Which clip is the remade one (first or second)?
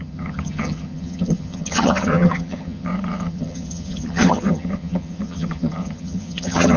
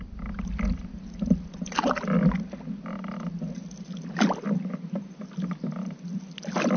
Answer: first